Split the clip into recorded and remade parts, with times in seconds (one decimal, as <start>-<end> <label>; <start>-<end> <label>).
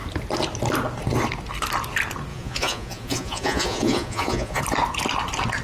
0.0-2.3 recorded; 2.3-4.6 remade; 4.6-5.6 recorded